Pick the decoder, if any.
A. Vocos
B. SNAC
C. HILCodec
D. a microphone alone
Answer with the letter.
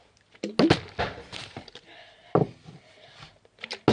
D